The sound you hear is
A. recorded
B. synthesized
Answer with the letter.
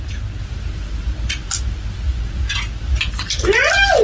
A